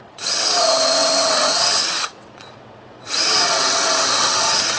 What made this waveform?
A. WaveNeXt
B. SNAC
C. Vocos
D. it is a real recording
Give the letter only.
A